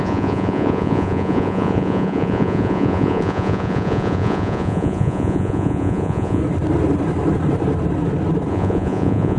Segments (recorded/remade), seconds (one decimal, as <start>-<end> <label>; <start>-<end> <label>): 0.0-6.4 remade; 6.4-8.5 recorded; 8.5-9.4 remade